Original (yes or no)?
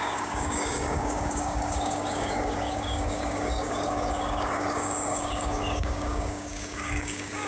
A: no